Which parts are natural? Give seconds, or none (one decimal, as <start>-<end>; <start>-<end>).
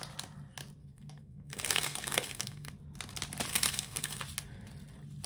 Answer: 0.0-0.8; 2.7-3.5; 4.2-5.3